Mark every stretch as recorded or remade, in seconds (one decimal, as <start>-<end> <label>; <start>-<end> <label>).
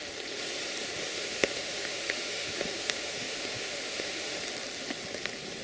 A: 0.0-1.0 recorded; 1.0-4.4 remade; 4.4-5.6 recorded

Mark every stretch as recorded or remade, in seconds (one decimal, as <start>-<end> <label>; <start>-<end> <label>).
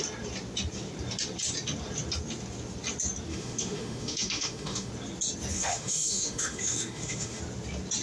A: 0.0-3.3 recorded; 3.3-4.9 remade; 4.9-5.5 recorded; 5.5-7.4 remade; 7.4-8.0 recorded